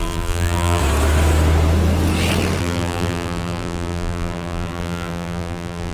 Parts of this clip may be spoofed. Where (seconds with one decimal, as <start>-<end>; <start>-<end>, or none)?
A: 0.0-0.8; 2.6-5.9